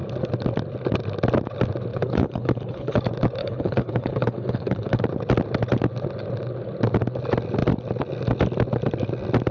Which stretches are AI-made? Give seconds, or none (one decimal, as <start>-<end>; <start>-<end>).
1.9-3.0; 3.4-5.0